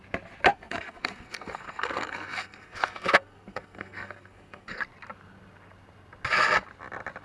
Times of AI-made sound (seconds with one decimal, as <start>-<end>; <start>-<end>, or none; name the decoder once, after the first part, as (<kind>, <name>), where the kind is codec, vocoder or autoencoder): 0.5-4.8 (codec, SNAC)